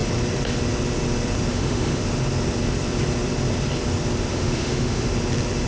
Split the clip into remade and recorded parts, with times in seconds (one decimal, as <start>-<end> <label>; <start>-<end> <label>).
0.0-1.5 recorded; 1.5-2.0 remade; 2.0-4.3 recorded; 4.3-5.1 remade; 5.1-5.7 recorded